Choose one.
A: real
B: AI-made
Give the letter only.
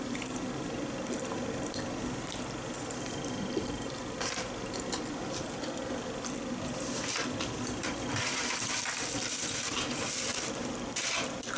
B